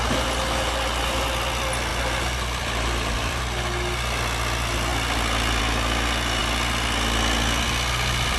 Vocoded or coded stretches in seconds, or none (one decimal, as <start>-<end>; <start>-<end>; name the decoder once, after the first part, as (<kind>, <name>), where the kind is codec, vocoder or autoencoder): 1.9-3.4 (vocoder, BigVGAN v2)

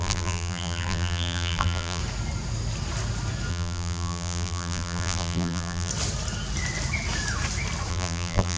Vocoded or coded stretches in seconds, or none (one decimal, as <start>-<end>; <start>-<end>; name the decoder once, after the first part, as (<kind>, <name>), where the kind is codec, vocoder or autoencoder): 0.0-2.0 (vocoder, BigVGAN v2); 3.5-5.9; 7.9-8.6